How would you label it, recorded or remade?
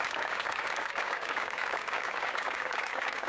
remade